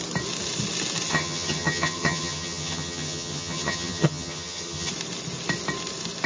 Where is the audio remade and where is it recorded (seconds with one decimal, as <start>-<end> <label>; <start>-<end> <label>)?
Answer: 0.0-1.1 recorded; 1.1-4.9 remade; 4.9-6.3 recorded